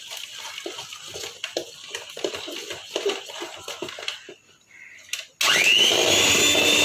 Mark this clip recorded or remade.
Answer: recorded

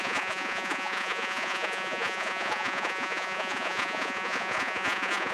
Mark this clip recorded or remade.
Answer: remade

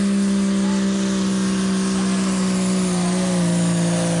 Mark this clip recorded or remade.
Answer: recorded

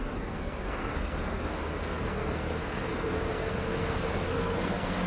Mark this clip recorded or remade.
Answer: remade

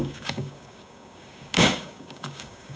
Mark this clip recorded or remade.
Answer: remade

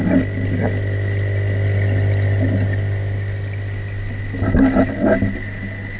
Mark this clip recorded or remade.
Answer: recorded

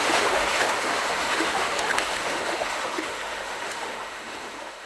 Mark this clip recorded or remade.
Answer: remade